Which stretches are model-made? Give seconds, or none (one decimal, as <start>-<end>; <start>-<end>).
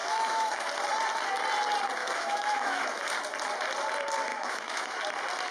0.0-0.7; 2.0-3.0; 4.3-4.9